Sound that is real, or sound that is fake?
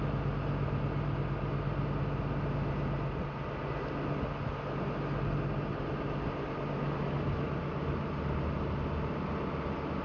real